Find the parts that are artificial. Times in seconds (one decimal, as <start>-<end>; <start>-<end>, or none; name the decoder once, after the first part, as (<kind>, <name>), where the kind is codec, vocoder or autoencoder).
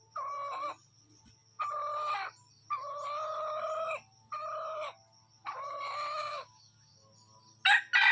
6.2-6.9 (codec, DAC)